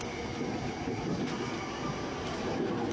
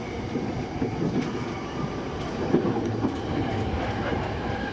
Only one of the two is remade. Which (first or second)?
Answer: second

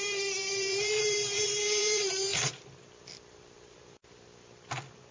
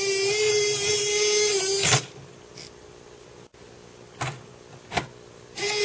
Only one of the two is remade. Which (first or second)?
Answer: first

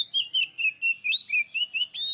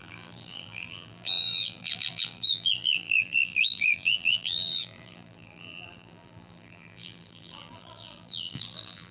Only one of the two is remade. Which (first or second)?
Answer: second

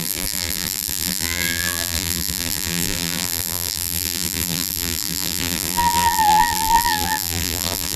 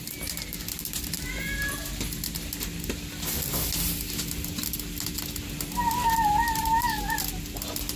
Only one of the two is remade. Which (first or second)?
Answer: first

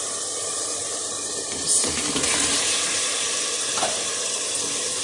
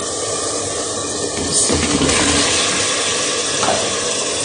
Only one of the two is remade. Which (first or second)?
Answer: first